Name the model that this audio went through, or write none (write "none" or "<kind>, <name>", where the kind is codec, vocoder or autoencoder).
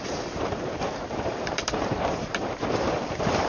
vocoder, BigVGAN v2